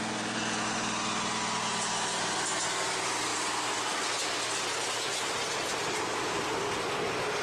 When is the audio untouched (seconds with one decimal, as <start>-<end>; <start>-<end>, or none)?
0.0-7.4